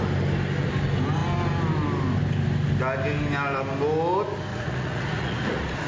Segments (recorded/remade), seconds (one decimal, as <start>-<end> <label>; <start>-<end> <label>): 0.0-4.5 recorded; 4.5-5.9 remade